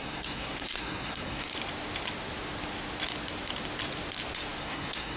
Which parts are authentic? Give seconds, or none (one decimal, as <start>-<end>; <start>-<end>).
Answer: 1.5-4.6